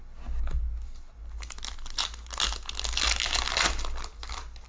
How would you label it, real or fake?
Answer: real